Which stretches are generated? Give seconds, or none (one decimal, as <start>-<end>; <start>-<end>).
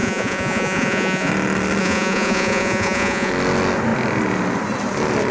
0.0-1.3; 1.8-3.3